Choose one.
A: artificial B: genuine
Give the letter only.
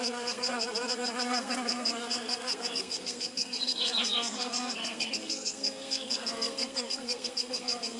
A